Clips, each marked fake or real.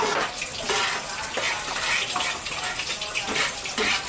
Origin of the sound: real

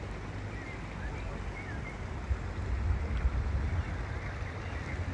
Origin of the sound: real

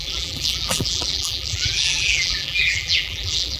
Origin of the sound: fake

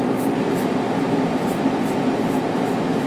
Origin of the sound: real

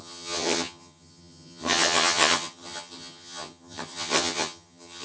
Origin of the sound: fake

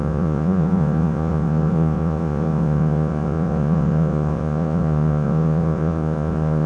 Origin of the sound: fake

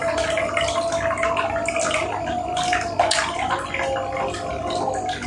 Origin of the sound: real